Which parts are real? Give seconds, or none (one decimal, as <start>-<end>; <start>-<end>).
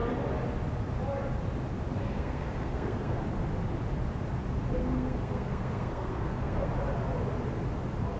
0.0-2.1; 3.2-4.8; 6.7-8.2